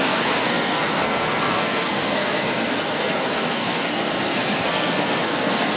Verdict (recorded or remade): remade